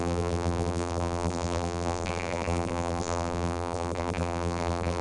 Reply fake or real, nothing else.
fake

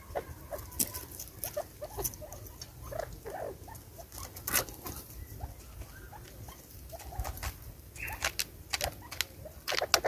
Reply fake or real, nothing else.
real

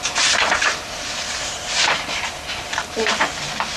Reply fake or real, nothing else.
fake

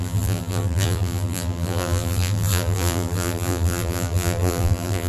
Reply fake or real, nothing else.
fake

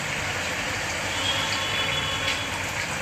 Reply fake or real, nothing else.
fake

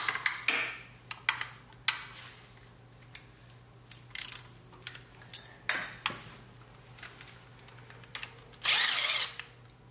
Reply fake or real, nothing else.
real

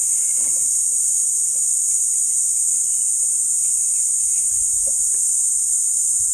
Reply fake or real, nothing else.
real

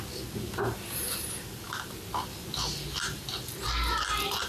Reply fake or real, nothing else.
real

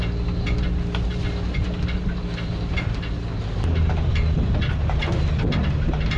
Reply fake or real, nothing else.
real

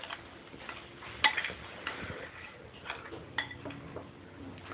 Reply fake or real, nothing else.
real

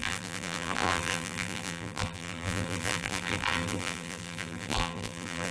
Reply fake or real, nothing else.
fake